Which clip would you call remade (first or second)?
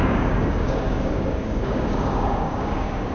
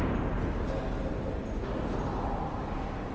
first